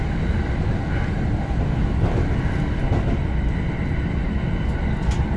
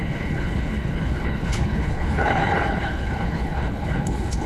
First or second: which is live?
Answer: first